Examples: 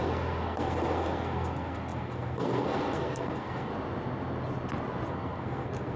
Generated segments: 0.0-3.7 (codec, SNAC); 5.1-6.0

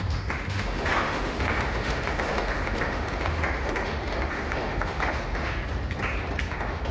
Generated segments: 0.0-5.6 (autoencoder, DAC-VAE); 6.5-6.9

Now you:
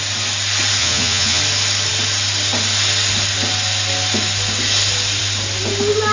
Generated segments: 0.8-1.4 (vocoder, Vocos)

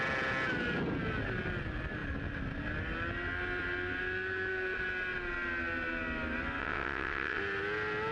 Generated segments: 6.6-7.4 (vocoder, WaveNeXt)

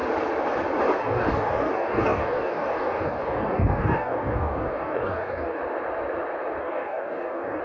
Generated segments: 1.0-5.6 (codec, DAC); 6.6-7.6